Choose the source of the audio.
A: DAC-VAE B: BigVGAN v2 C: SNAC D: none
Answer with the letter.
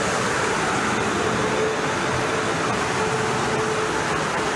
D